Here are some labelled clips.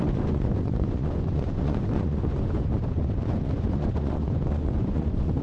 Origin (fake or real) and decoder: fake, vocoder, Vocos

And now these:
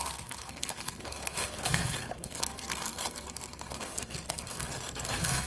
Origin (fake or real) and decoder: fake, codec, SNAC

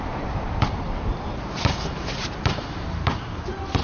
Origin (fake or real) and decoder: real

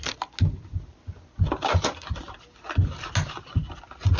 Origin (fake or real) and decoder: real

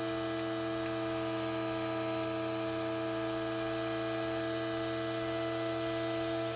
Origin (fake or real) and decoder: real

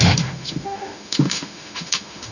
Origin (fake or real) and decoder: fake, autoencoder, DAC-VAE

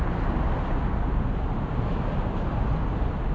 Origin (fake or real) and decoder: real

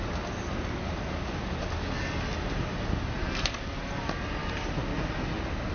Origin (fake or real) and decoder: real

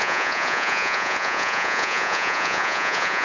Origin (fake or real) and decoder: fake, vocoder, Vocos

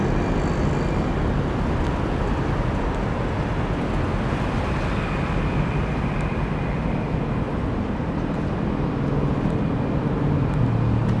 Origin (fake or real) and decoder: real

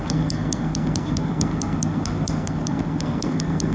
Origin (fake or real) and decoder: fake, codec, SNAC